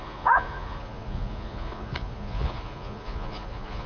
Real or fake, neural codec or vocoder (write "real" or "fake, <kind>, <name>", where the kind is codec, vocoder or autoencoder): fake, vocoder, Vocos